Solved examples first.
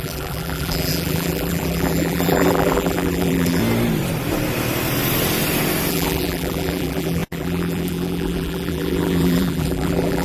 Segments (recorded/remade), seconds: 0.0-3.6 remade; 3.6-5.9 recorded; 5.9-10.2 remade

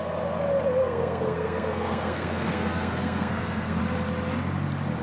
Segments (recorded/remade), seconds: 0.0-0.8 recorded; 0.8-3.8 remade; 3.8-5.0 recorded

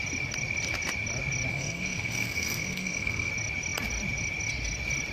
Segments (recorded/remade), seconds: 0.0-1.5 recorded; 1.5-3.3 remade; 3.3-5.1 recorded

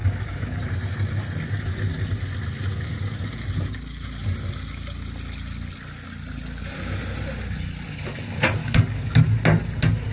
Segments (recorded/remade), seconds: 0.0-0.6 remade; 0.6-8.6 recorded; 8.6-9.2 remade; 9.2-10.1 recorded